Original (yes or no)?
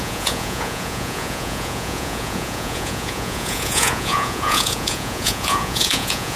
no